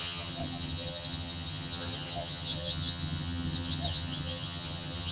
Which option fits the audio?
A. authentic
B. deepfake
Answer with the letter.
B